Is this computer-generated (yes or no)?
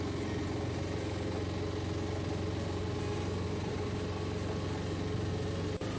no